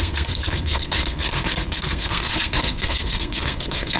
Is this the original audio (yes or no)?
no